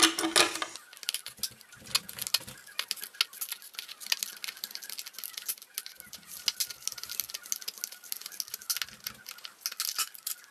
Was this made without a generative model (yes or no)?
yes